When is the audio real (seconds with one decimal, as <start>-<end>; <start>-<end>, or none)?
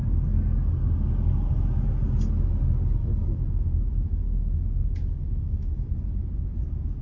0.0-3.0; 5.9-7.0